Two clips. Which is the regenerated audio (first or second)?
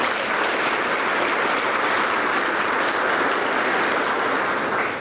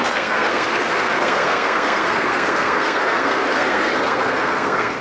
second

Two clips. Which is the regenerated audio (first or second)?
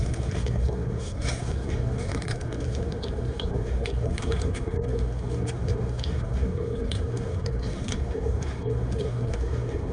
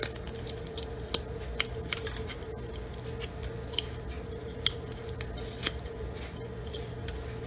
first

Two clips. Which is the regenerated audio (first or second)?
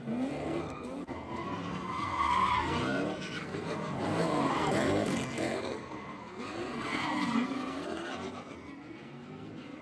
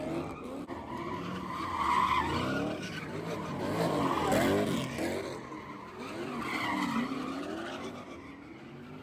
first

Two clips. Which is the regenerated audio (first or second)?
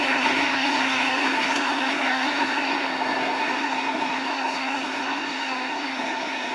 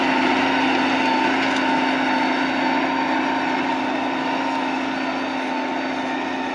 first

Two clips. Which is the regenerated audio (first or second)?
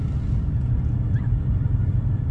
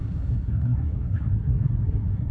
second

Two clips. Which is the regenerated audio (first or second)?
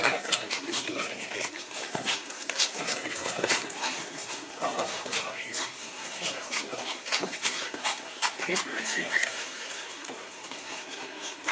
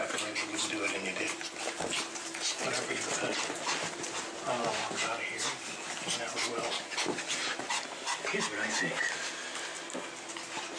first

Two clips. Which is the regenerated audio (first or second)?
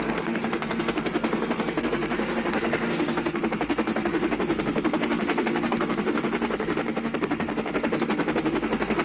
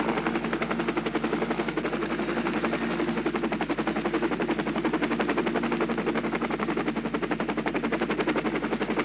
first